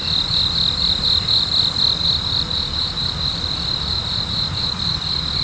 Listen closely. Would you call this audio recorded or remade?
recorded